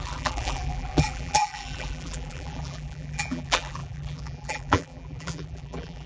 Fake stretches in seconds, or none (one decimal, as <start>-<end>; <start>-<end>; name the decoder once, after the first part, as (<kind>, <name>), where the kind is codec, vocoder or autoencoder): 0.0-6.1 (vocoder, BigVGAN v2)